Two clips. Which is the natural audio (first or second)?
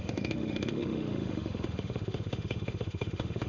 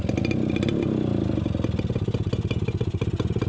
second